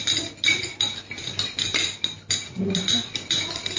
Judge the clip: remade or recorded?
recorded